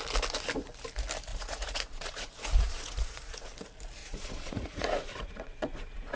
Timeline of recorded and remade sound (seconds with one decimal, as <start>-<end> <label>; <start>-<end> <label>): 0.0-1.3 recorded; 1.3-3.5 remade; 3.5-4.0 recorded; 4.0-6.2 remade